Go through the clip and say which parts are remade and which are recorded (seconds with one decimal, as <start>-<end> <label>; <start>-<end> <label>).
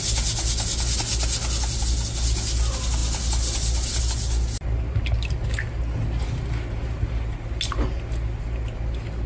0.0-9.3 recorded